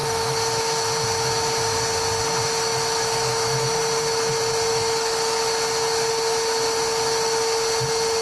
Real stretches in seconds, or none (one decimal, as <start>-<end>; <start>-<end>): 0.6-2.7; 3.8-4.7; 5.4-8.2